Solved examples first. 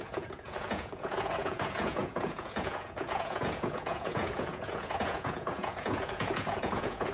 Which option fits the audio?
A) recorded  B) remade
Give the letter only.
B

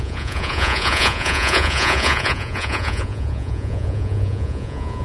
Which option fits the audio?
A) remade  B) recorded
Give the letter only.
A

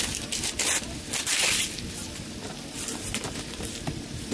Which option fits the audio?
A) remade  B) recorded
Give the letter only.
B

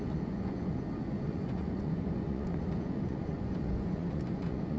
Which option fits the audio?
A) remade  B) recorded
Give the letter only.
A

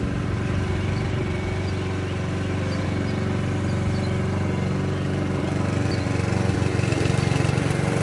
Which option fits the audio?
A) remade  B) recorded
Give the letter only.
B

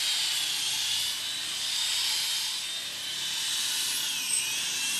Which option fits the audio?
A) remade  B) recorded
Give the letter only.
B